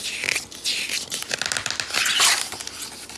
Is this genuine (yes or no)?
yes